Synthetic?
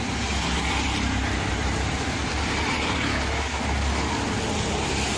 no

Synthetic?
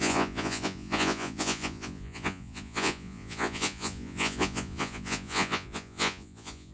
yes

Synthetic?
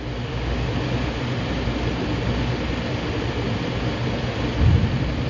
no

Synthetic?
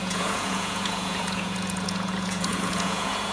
yes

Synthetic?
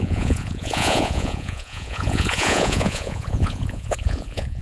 yes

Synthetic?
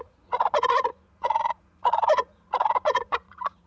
yes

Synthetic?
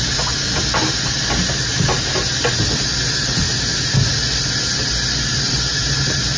no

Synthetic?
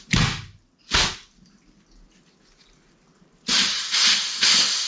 no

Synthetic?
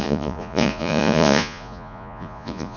yes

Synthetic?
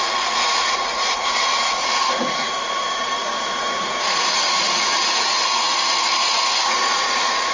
yes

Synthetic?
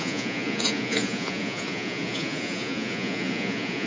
yes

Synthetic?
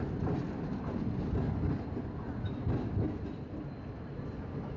no